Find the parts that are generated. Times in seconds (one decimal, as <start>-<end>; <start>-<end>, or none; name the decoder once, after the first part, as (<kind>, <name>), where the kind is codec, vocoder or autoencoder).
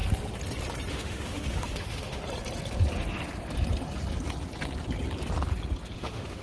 0.9-2.2 (autoencoder, DAC-VAE); 6.0-6.4